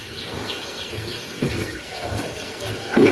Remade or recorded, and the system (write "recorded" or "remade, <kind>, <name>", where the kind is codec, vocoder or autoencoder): remade, codec, SNAC